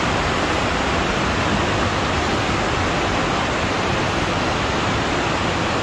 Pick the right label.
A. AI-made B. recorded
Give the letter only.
B